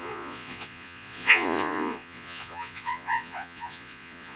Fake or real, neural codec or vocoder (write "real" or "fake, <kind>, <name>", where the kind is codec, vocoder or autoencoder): fake, vocoder, Vocos